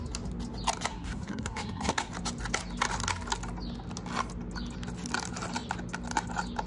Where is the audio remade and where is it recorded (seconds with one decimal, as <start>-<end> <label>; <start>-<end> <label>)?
0.0-0.9 recorded; 0.9-2.1 remade; 2.1-6.7 recorded